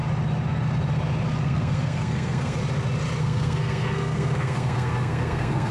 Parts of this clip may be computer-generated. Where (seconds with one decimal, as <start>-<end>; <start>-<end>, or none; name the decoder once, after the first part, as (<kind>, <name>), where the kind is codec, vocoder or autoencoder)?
1.4-2.6 (codec, SNAC); 3.2-5.7